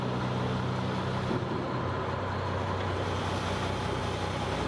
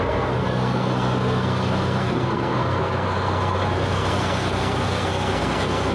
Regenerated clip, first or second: second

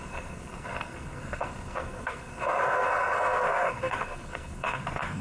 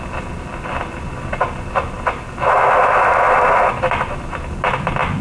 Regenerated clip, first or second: first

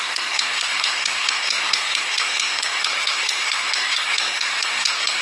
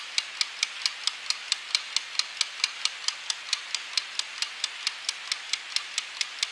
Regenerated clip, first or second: first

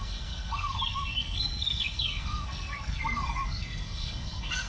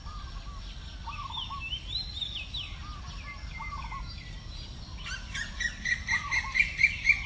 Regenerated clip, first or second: first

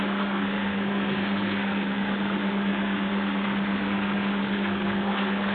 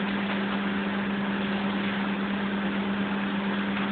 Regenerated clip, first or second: first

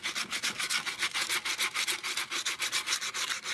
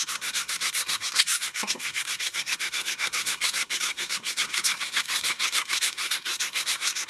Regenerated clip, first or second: second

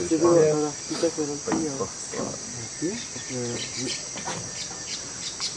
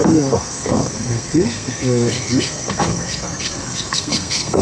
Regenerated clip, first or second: second